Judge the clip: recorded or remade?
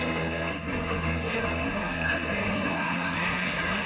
remade